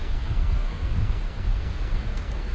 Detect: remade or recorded remade